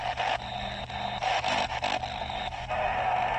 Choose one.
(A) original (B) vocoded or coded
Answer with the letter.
B